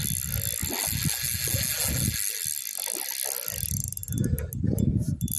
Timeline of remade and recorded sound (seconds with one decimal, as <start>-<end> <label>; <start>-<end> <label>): 0.0-5.4 recorded